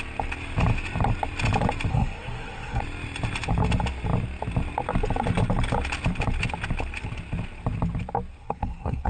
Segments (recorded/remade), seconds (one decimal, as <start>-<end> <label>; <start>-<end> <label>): 0.0-1.9 recorded; 1.9-2.8 remade; 2.8-8.4 recorded; 8.4-9.1 remade